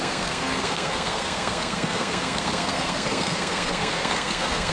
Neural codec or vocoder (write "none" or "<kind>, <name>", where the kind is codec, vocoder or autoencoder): codec, SNAC